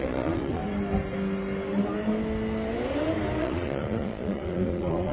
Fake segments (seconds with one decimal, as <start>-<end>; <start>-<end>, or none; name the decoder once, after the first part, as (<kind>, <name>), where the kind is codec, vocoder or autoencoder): 0.0-0.6 (vocoder, Vocos); 3.4-5.1